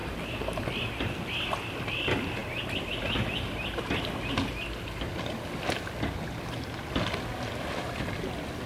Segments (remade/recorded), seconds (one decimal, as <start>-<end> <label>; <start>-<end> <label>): 0.0-8.7 recorded